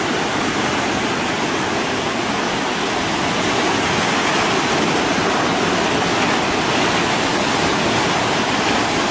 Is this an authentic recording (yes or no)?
yes